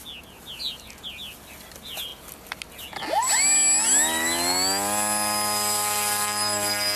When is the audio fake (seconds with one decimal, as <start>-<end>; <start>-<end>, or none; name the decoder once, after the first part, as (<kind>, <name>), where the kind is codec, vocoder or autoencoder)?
none